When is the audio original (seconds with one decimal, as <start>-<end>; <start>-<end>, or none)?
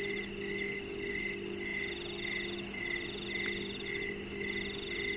0.0-5.2